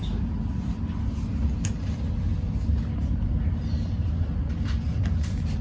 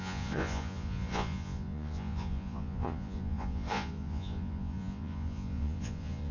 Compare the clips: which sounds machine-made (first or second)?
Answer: second